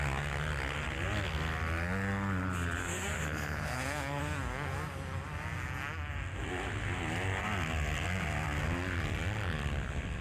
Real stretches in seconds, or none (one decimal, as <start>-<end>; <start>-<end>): 0.0-2.8; 4.2-10.2